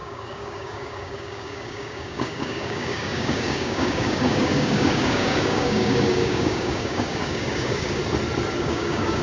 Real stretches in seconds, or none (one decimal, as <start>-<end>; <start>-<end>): 8.0-8.6